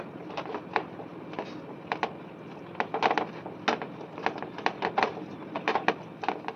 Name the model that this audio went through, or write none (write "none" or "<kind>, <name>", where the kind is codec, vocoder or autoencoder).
none